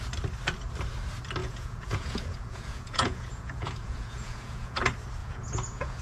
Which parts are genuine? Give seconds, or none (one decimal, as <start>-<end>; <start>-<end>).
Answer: 0.0-1.4; 4.8-5.2